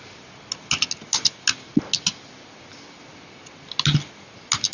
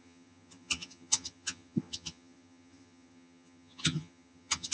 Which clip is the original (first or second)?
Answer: first